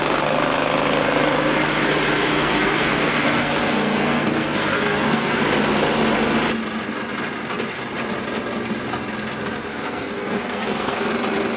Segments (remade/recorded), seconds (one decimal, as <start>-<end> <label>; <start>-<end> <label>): 0.0-2.3 recorded; 2.3-5.4 remade; 5.4-9.7 recorded; 9.7-11.1 remade; 11.1-11.6 recorded